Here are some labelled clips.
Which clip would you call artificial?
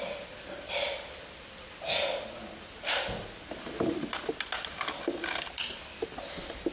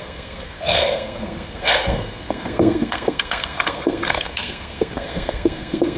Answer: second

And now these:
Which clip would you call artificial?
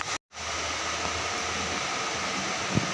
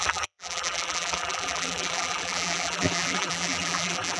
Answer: second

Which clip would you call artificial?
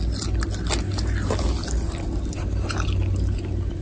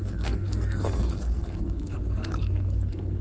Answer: second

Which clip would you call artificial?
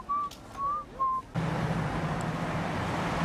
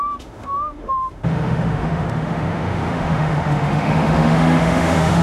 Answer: second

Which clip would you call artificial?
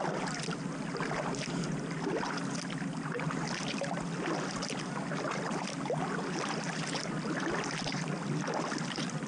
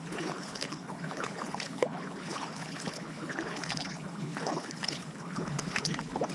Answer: second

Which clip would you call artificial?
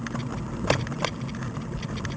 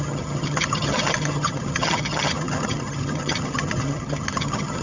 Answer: second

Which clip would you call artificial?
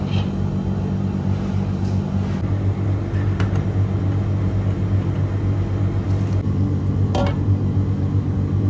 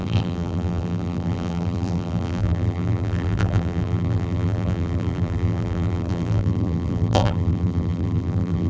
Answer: second